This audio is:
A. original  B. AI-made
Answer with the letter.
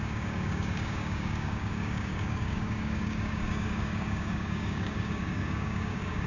B